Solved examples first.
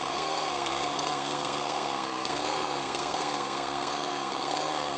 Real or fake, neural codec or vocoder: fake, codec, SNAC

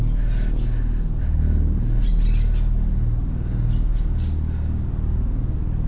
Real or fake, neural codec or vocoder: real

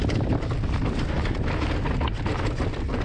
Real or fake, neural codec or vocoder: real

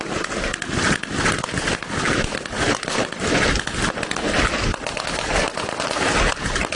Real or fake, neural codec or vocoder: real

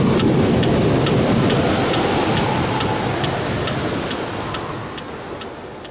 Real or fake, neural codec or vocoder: real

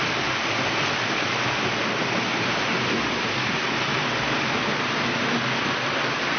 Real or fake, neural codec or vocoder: real